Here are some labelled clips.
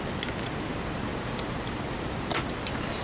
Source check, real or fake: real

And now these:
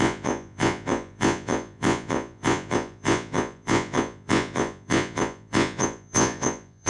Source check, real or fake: fake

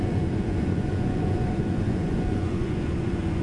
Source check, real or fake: fake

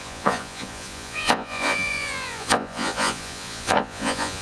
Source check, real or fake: fake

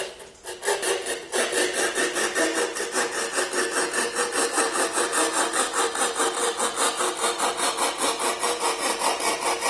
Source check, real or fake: real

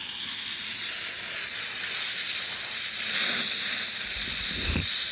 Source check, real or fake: real